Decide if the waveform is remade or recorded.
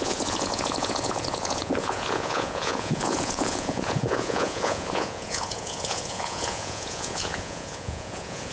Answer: remade